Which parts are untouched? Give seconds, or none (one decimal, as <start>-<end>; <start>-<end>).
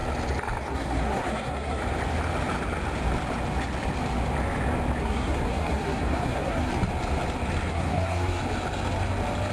0.0-0.7; 1.8-5.0; 6.7-7.7; 8.4-9.5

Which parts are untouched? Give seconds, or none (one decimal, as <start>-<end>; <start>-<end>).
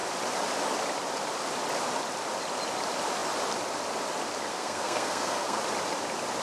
0.0-4.5; 5.6-6.4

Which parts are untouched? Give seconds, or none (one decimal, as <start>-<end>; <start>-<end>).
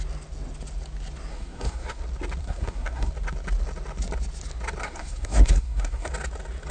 0.0-1.3; 2.0-2.4; 3.1-4.8; 6.1-6.7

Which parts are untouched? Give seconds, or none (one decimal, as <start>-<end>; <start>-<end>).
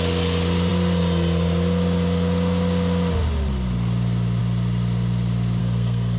0.0-5.6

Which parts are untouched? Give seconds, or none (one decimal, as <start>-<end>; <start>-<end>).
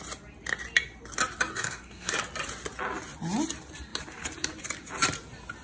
0.0-1.5; 2.1-5.6